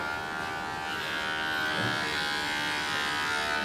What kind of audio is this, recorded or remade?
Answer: recorded